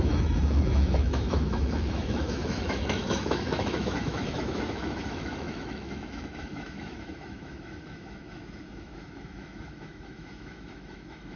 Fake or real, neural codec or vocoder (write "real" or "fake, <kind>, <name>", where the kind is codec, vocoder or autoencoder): fake, autoencoder, DAC-VAE